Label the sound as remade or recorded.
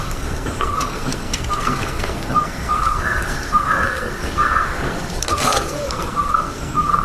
remade